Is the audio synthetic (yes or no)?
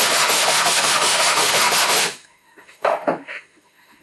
yes